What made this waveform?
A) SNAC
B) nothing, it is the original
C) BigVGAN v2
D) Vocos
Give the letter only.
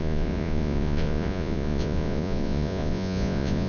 D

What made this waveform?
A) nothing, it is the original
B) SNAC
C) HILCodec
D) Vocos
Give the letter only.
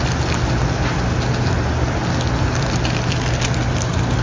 A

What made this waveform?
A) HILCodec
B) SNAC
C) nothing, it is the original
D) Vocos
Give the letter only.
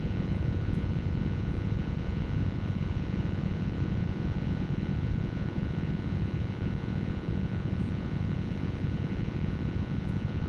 D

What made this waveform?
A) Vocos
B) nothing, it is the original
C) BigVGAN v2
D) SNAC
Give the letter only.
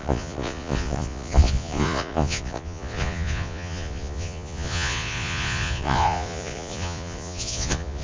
A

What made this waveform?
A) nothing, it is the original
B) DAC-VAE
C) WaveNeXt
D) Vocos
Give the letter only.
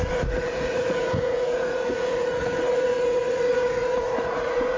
D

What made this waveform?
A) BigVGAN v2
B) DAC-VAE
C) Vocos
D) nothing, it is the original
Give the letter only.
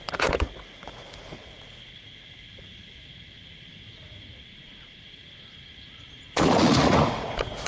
C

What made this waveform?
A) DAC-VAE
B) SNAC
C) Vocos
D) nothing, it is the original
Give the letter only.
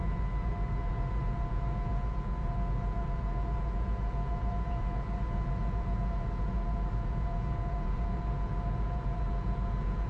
C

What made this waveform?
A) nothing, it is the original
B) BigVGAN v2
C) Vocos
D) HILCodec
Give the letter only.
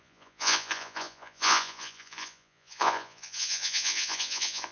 C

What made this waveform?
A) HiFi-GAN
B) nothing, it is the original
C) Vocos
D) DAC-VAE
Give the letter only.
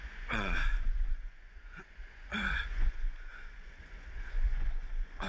C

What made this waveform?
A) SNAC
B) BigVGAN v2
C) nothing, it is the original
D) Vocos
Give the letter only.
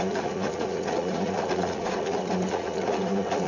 D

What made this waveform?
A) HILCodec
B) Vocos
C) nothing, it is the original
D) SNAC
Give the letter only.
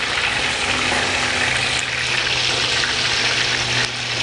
C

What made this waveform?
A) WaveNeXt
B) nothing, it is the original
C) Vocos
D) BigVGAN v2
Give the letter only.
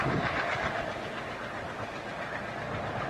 B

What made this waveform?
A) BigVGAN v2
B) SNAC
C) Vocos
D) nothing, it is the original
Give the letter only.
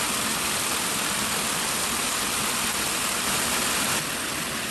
D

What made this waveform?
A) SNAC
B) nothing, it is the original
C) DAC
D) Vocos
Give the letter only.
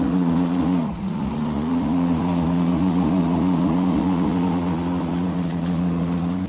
D